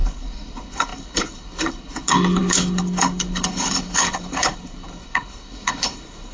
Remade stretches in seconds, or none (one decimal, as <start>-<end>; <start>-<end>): 0.0-6.3